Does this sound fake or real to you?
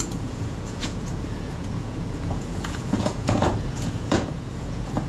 fake